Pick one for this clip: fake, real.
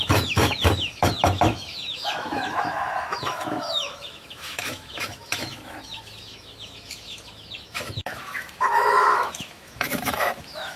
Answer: fake